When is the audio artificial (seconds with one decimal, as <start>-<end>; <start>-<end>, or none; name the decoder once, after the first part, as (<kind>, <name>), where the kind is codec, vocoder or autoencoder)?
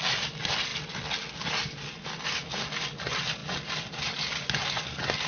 none